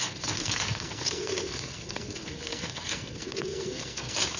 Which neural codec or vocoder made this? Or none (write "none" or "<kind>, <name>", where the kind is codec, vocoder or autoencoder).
codec, SNAC